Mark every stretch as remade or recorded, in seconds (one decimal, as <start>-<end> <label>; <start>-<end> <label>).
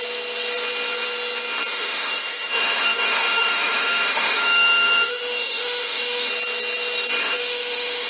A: 0.0-1.7 recorded; 1.7-6.3 remade; 6.3-7.2 recorded; 7.2-8.1 remade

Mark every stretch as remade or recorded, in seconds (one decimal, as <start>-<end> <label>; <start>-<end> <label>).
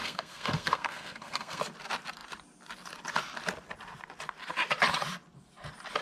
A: 0.0-1.6 remade; 1.6-6.0 recorded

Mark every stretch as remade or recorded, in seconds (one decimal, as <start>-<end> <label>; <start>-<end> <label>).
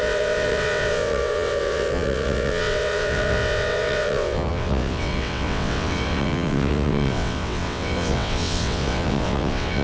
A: 0.0-9.8 remade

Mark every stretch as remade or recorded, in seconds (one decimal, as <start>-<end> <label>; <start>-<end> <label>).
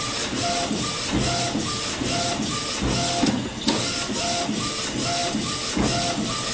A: 0.0-6.5 recorded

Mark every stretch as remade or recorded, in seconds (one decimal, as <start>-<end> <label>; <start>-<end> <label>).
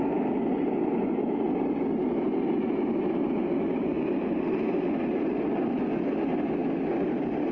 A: 0.0-7.5 recorded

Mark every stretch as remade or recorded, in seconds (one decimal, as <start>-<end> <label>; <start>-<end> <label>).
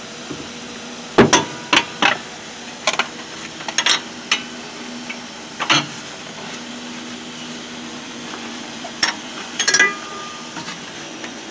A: 0.0-7.9 recorded; 7.9-9.7 remade; 9.7-10.7 recorded; 10.7-11.5 remade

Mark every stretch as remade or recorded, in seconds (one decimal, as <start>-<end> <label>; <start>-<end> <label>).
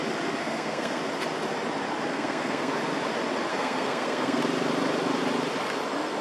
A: 0.0-0.4 recorded; 0.4-1.0 remade; 1.0-2.1 recorded; 2.1-2.7 remade; 2.7-3.5 recorded; 3.5-4.4 remade; 4.4-6.2 recorded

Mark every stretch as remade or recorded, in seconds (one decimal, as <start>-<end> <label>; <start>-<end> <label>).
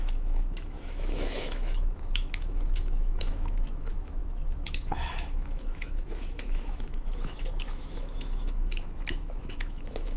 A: 0.0-10.2 remade